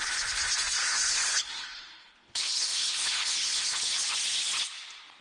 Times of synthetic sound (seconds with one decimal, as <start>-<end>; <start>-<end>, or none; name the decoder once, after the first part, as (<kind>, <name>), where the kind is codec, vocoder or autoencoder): 0.8-3.9 (codec, HILCodec)